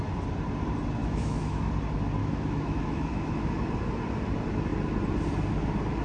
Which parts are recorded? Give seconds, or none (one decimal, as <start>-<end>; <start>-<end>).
0.0-1.0; 1.7-2.2; 3.4-6.0